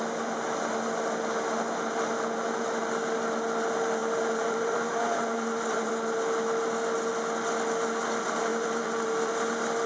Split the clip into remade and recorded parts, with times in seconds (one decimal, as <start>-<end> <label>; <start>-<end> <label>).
0.0-4.0 recorded; 4.0-5.9 remade; 5.9-8.5 recorded; 8.5-9.3 remade; 9.3-9.9 recorded

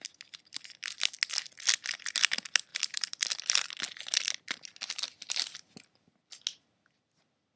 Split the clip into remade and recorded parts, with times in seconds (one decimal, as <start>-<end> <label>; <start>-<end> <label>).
0.0-2.7 recorded; 2.7-5.7 remade; 5.7-7.6 recorded

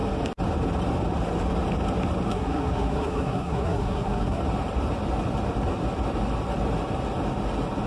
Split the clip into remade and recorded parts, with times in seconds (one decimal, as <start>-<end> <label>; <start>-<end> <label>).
0.0-2.3 recorded; 2.3-4.4 remade; 4.4-7.9 recorded

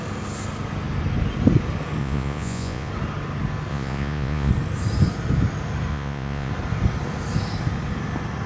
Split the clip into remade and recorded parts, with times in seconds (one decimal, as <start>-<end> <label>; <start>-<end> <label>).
0.0-2.0 recorded; 2.0-2.9 remade; 2.9-3.7 recorded; 3.7-4.5 remade; 4.5-5.9 recorded; 5.9-6.5 remade; 6.5-8.5 recorded